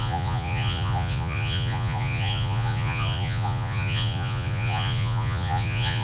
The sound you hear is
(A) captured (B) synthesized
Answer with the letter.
B